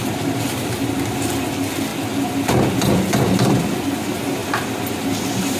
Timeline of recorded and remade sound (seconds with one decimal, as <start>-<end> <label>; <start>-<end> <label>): 0.0-1.9 remade; 1.9-2.8 recorded; 2.8-4.4 remade; 4.4-5.6 recorded